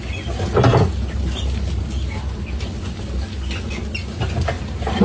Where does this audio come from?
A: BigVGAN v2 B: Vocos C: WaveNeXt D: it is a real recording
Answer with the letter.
D